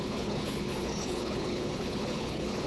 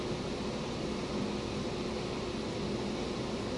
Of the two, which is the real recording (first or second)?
second